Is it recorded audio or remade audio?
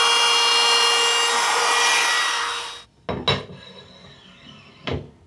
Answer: recorded